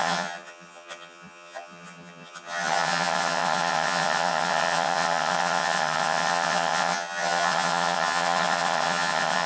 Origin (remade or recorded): remade